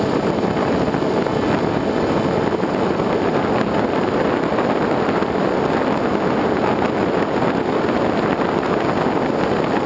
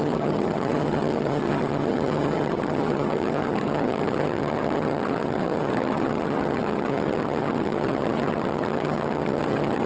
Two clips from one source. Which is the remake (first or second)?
second